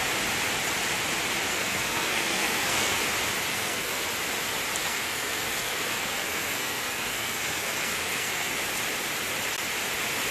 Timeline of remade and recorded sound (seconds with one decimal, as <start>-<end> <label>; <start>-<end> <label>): 0.0-1.5 recorded; 1.5-3.0 remade; 3.0-3.5 recorded; 3.5-4.1 remade; 4.1-4.8 recorded; 4.8-8.5 remade; 8.5-10.3 recorded